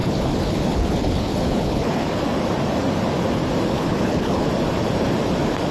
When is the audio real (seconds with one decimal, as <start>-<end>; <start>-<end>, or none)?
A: 2.2-3.7; 4.5-5.7